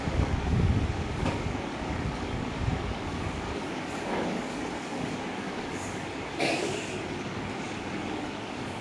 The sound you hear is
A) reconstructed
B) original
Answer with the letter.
A